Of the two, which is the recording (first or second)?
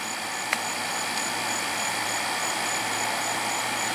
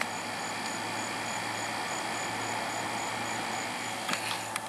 second